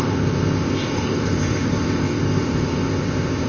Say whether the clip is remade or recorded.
remade